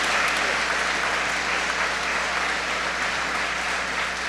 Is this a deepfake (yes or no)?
no